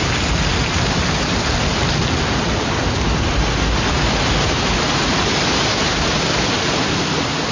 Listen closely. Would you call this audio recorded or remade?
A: recorded